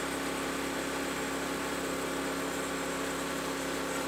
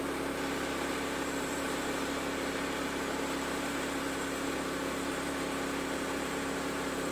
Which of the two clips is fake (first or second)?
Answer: second